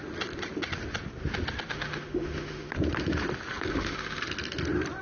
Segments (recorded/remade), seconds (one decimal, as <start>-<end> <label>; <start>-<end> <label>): 0.0-1.7 recorded; 1.7-2.7 remade; 2.7-3.7 recorded; 3.7-4.2 remade; 4.2-5.0 recorded